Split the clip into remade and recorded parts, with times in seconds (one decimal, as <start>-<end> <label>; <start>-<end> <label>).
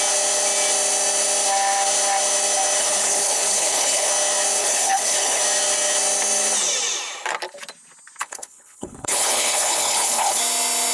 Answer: 0.0-2.8 recorded; 2.8-4.1 remade; 4.1-4.6 recorded; 4.6-5.4 remade; 5.4-8.2 recorded; 8.2-10.4 remade; 10.4-10.9 recorded